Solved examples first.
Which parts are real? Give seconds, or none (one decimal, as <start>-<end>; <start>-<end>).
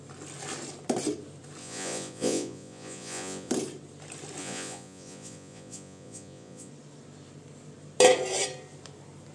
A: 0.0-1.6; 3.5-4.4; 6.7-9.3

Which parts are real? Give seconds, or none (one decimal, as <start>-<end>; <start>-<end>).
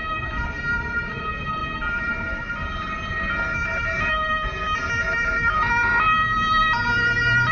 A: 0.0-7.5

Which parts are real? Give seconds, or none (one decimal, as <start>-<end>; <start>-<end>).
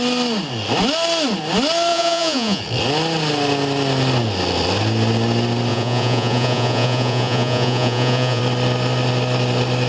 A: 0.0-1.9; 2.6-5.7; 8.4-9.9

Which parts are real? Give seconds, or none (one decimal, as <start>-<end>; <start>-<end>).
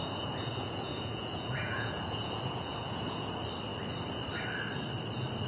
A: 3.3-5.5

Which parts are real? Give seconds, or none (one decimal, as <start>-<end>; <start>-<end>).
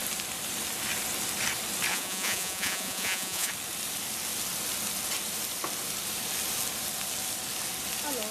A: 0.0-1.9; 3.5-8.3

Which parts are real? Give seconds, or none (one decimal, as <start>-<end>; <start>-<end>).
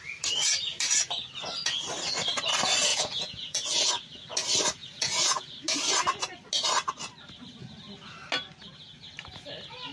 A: 0.0-2.9; 3.9-4.8; 5.5-9.9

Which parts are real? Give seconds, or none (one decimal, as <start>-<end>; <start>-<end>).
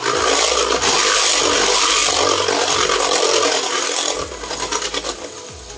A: 0.0-5.8